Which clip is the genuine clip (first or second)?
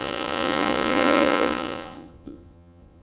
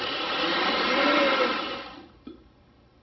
second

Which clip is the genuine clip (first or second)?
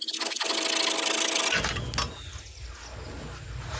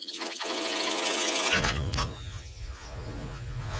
first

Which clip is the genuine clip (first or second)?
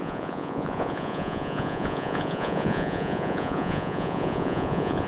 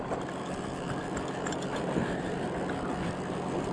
second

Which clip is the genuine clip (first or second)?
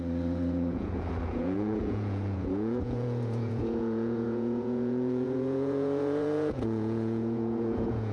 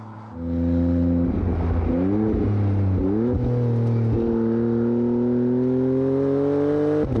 second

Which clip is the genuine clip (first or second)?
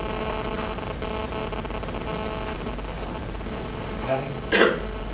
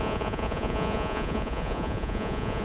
first